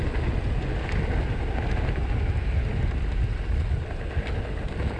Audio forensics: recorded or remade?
recorded